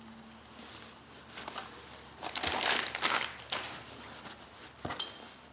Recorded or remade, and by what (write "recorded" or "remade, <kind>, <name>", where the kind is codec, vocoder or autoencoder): recorded